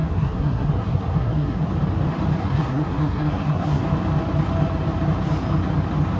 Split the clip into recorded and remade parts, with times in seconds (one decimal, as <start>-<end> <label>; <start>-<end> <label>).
0.0-1.7 remade; 1.7-2.4 recorded; 2.4-3.8 remade; 3.8-6.2 recorded